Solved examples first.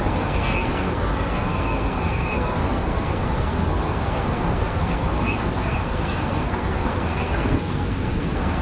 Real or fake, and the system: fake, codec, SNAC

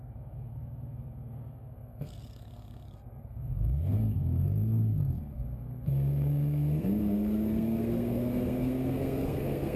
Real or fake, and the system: fake, codec, SNAC